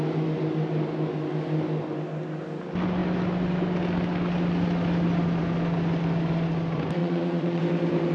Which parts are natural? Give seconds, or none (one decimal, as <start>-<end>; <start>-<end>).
0.0-7.0; 7.6-8.1